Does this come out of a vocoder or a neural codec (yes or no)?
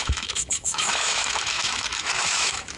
yes